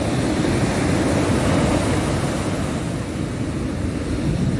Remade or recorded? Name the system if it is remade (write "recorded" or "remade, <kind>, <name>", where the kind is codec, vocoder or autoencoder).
recorded